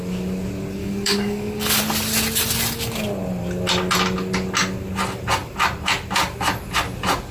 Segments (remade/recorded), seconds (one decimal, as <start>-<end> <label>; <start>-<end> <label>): 0.0-0.8 recorded; 0.8-1.8 remade; 1.8-7.3 recorded